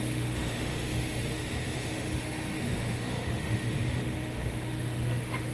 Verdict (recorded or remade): remade